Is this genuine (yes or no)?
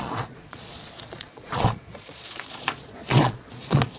no